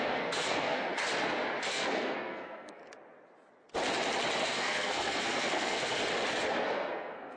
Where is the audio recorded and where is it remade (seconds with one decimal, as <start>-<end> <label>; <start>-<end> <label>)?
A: 0.0-0.9 remade; 0.9-1.7 recorded; 1.7-2.8 remade; 2.8-4.4 recorded; 4.4-6.0 remade; 6.0-6.6 recorded; 6.6-7.4 remade